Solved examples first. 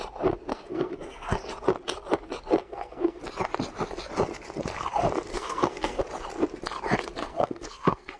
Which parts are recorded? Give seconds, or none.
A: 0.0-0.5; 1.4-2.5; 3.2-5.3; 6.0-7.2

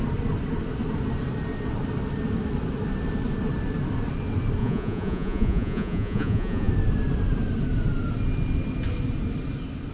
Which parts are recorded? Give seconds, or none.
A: 0.0-4.6; 6.7-9.9